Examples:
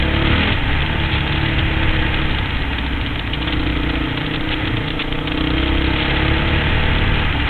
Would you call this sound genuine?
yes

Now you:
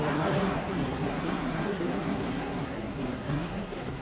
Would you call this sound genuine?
no